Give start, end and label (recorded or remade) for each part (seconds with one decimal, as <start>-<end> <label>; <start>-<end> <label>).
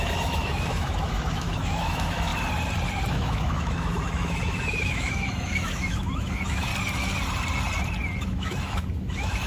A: 0.0-2.3 remade; 2.3-3.1 recorded; 3.1-6.7 remade; 6.7-8.2 recorded; 8.2-9.5 remade